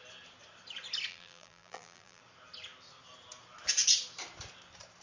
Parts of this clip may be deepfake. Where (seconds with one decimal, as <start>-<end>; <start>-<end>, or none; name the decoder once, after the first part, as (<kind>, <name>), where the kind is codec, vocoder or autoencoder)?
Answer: 1.1-2.2 (vocoder, BigVGAN v2)